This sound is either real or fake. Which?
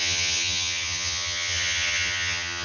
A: fake